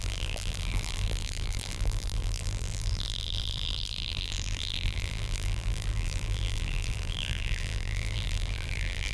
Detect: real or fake fake